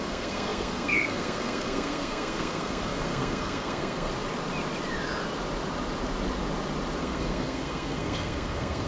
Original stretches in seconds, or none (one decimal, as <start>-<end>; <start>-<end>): 4.1-7.0